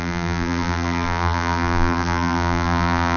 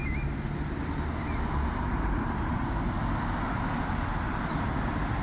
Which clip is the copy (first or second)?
first